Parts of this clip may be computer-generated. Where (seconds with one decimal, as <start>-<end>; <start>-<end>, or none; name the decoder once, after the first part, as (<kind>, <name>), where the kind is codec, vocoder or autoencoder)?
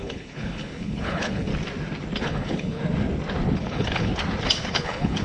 0.0-1.5 (codec, HILCodec); 2.2-2.8; 3.6-4.1; 4.7-5.2